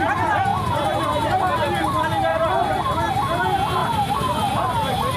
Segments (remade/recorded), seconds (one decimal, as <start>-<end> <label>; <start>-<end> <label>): 0.0-0.5 recorded; 0.5-1.4 remade; 1.4-2.3 recorded; 2.3-3.1 remade; 3.1-3.8 recorded; 3.8-4.5 remade; 4.5-5.2 recorded